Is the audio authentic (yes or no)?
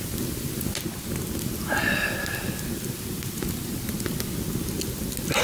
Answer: yes